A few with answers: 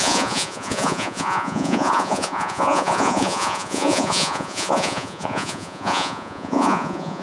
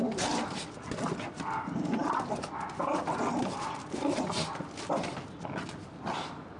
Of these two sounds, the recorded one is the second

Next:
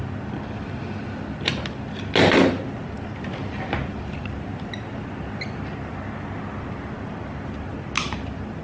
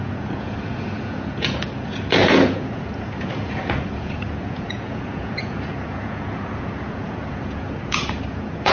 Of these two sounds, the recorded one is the first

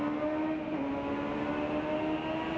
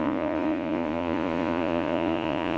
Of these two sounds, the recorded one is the first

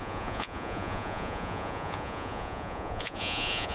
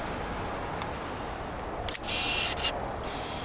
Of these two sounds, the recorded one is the second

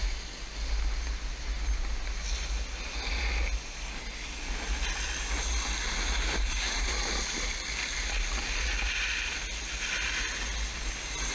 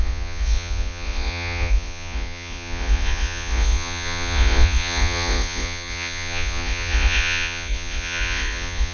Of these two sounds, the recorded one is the first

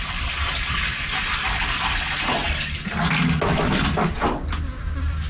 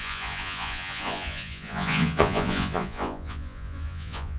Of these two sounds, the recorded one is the first